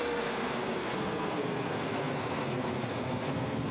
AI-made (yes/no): yes